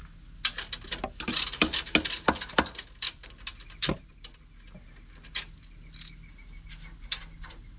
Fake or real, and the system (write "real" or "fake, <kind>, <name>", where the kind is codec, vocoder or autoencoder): real